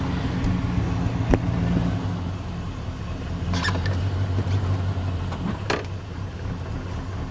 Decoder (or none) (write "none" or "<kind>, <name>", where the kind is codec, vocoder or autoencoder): none